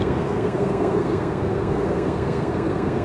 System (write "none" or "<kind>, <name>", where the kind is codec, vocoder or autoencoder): codec, SNAC